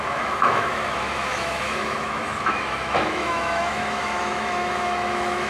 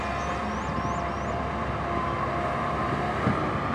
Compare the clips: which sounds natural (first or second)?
second